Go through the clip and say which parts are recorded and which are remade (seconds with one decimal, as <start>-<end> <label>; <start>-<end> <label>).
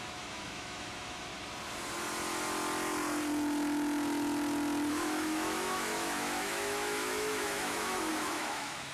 0.0-1.3 remade; 1.3-4.9 recorded; 4.9-8.9 remade